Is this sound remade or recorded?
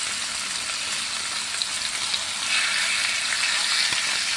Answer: recorded